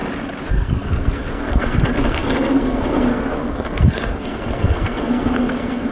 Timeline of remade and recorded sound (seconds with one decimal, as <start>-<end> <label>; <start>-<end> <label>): 0.0-0.5 recorded; 0.5-5.9 remade